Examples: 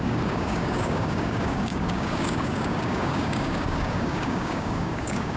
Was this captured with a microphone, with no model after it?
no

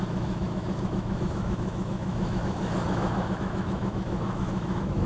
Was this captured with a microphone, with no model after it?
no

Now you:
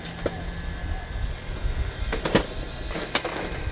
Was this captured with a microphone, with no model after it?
yes